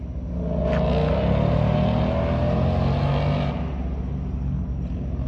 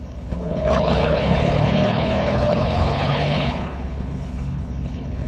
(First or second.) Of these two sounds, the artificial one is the second